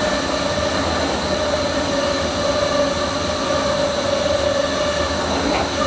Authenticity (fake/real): real